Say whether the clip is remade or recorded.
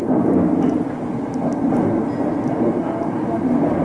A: recorded